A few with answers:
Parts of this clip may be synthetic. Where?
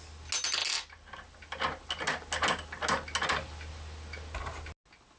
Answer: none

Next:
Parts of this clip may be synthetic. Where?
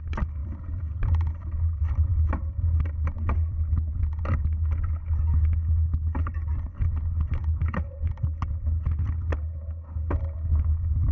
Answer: 0.4-1.8 (vocoder, BigVGAN v2)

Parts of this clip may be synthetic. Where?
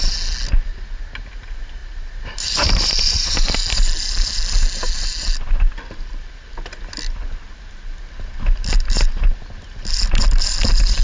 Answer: 0.7-1.3 (vocoder, BigVGAN v2); 1.8-3.5